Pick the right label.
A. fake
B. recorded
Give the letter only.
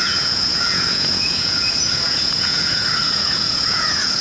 A